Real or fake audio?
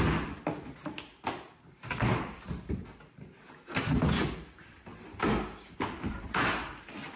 real